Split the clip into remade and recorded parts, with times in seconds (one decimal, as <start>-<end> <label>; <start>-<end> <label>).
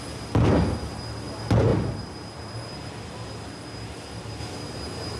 0.0-5.2 recorded